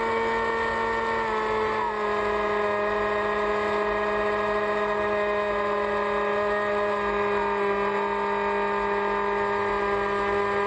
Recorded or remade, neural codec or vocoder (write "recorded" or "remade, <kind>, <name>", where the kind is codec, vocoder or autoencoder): recorded